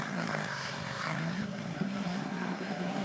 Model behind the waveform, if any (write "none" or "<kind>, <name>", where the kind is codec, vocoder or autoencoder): codec, SNAC